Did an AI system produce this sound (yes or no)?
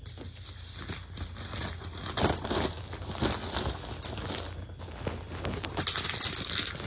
no